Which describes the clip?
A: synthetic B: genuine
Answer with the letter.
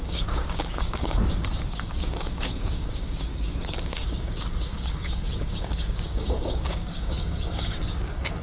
A